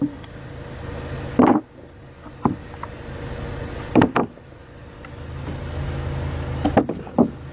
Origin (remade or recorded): recorded